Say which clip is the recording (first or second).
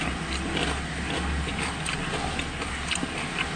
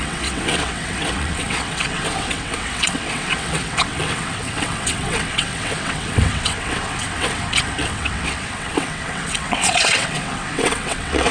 first